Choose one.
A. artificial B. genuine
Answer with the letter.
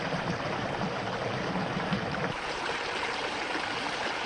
A